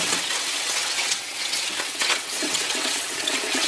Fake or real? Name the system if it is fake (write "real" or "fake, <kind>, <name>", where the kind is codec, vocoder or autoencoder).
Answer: fake, vocoder, WaveNeXt